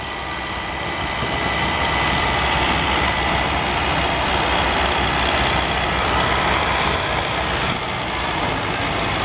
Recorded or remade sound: recorded